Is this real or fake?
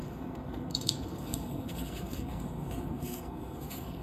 fake